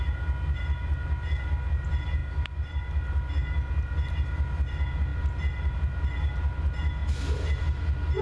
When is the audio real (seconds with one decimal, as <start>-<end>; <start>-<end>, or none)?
0.0-8.2